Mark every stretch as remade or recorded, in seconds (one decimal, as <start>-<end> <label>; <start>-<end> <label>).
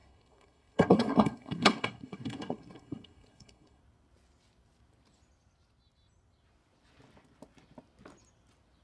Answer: 0.0-3.8 remade; 3.8-8.8 recorded